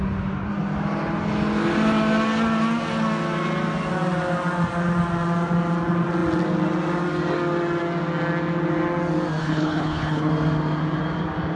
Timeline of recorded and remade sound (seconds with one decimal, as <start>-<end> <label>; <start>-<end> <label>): 0.0-9.4 recorded; 9.4-10.3 remade; 10.3-11.6 recorded